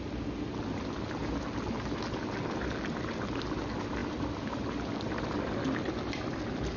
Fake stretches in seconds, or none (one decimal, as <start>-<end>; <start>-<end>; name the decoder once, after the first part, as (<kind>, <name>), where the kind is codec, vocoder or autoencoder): none